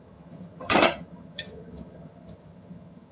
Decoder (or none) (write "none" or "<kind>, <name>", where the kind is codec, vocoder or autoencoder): vocoder, HiFi-GAN